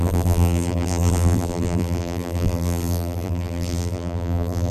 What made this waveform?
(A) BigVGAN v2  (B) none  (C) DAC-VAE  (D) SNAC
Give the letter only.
A